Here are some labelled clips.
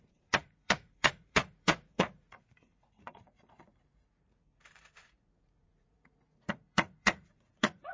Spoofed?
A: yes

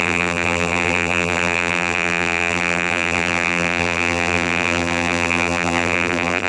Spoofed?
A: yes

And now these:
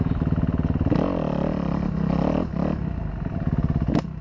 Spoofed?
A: no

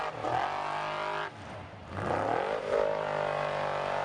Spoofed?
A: no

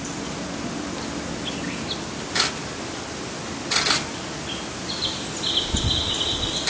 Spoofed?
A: no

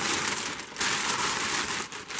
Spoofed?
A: no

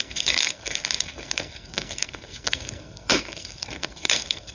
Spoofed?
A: yes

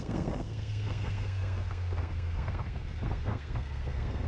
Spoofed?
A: yes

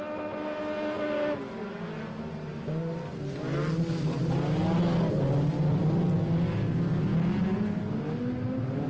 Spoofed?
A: no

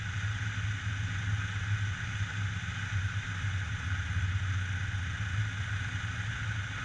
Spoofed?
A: no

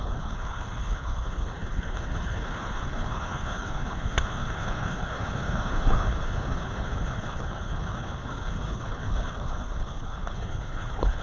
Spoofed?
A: yes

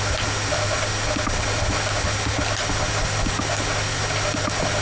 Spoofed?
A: no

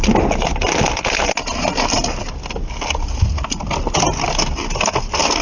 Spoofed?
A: no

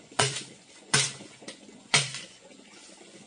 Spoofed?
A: yes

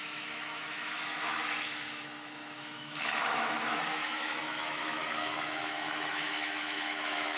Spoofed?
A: yes